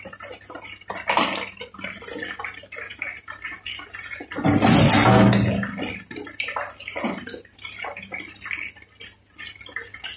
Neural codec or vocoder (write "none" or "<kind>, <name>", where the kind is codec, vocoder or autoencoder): none